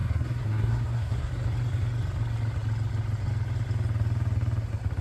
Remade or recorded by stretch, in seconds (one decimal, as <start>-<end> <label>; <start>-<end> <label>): 0.0-1.3 remade; 1.3-5.0 recorded